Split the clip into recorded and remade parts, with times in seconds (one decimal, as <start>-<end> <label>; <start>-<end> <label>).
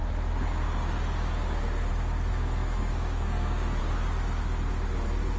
0.0-2.3 recorded; 2.3-3.8 remade; 3.8-5.4 recorded